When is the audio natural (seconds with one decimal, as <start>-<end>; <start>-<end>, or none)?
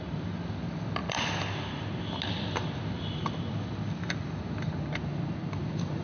0.0-6.0